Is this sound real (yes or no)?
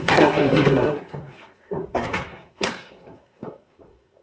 no